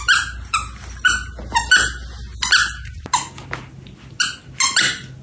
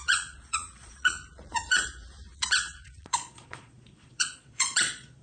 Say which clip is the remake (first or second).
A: second